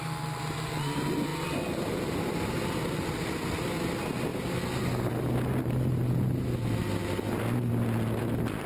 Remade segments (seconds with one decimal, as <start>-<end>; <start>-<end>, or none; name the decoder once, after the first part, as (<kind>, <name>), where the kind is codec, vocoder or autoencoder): 1.3-3.7 (vocoder, BigVGAN v2)